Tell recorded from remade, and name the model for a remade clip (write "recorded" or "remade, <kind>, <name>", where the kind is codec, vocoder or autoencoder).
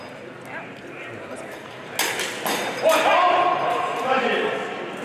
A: recorded